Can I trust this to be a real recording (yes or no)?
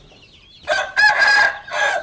no